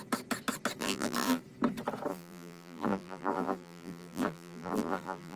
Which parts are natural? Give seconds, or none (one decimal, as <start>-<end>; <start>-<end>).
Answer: 0.0-0.8; 1.4-2.1